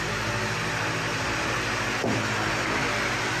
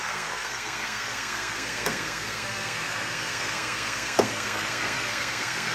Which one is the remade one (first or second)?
second